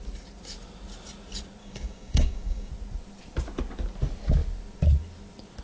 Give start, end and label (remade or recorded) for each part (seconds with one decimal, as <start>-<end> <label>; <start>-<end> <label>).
0.0-1.6 recorded; 1.6-2.7 remade; 2.7-5.6 recorded